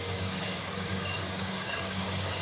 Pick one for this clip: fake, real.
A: fake